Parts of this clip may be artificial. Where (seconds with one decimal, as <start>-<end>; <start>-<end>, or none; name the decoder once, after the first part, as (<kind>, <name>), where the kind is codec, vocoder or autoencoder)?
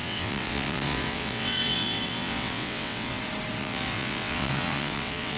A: 0.0-3.2 (vocoder, WaveNeXt); 3.6-5.4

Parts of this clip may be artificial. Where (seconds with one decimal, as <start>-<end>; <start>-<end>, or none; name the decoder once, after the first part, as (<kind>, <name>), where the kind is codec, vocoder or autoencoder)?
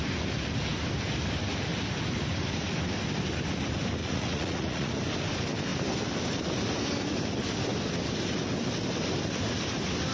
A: 4.0-4.9 (vocoder, Vocos)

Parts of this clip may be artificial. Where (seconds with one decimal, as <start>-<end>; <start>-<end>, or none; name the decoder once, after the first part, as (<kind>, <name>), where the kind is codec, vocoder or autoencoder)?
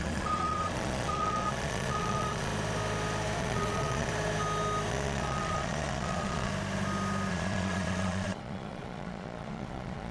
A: 0.0-2.5 (vocoder, Vocos); 3.4-4.1; 4.9-6.5; 7.3-10.1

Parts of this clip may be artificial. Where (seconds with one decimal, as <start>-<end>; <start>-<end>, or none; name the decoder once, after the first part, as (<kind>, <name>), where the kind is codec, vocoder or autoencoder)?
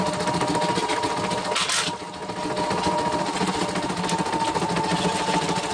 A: none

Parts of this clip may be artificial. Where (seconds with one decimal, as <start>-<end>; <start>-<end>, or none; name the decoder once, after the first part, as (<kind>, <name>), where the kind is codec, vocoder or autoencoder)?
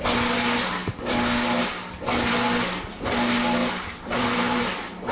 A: 3.6-4.6 (vocoder, BigVGAN v2)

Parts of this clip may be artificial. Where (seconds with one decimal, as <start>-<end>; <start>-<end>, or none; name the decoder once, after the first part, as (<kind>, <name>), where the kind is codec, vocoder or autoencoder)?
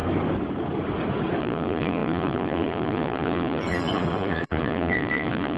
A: 1.4-5.6 (vocoder, Vocos)